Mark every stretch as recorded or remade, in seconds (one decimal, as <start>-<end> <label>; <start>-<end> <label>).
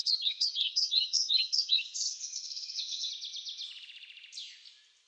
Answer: 0.0-3.1 remade; 3.1-5.1 recorded